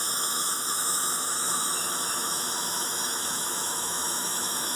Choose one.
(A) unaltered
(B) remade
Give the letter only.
B